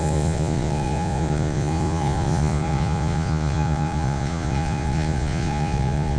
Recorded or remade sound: remade